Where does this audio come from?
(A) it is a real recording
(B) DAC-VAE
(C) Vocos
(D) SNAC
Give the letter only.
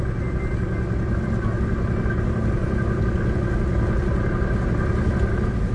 A